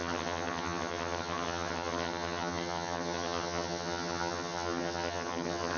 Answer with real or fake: fake